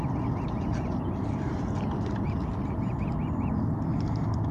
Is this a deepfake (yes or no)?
no